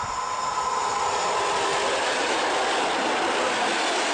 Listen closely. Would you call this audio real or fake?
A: real